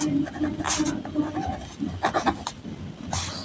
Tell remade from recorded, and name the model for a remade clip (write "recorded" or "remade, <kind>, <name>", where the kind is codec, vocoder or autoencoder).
recorded